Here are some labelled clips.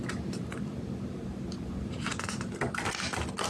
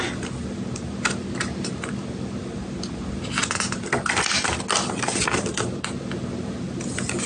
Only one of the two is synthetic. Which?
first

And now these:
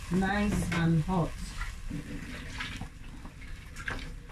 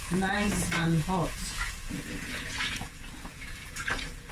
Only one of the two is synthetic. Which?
second